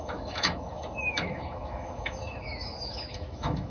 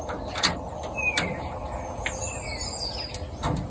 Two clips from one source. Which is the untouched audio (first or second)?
second